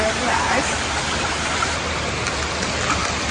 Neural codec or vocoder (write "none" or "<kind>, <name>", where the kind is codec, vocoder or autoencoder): none